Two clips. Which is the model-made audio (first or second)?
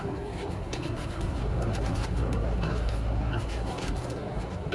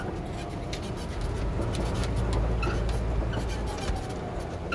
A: first